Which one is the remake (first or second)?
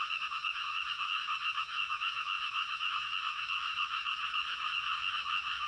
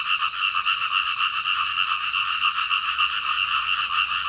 first